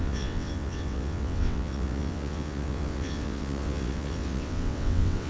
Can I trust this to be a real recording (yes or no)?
no